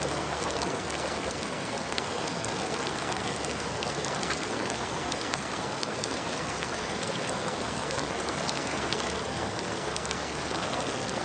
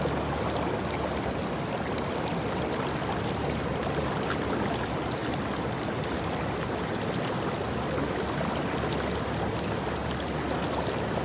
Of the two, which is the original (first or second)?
second